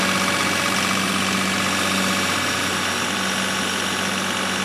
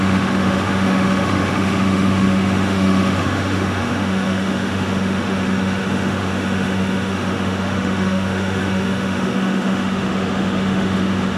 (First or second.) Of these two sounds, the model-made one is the second